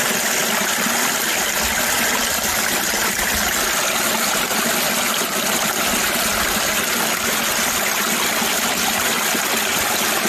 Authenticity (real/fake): real